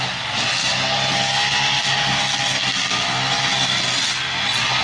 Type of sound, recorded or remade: recorded